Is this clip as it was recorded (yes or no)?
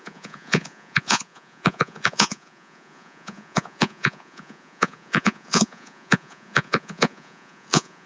no